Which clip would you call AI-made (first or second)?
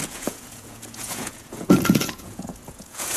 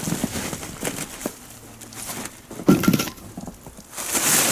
first